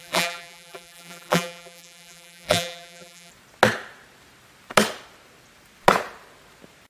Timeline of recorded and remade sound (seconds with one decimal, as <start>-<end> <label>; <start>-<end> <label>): 0.0-3.3 remade; 3.3-6.9 recorded